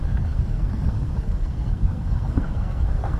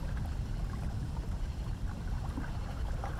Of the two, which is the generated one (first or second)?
first